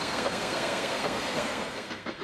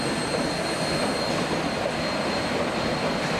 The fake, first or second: first